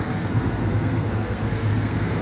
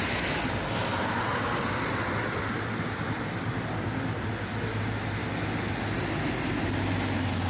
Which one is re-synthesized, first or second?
first